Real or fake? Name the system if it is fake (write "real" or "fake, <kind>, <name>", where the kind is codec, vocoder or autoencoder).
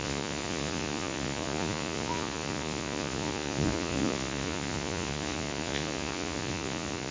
fake, vocoder, Vocos